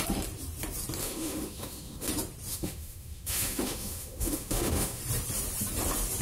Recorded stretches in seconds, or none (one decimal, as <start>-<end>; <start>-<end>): 0.0-1.0; 2.1-2.5; 5.0-6.2